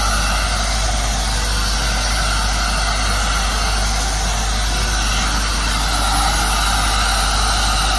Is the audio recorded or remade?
recorded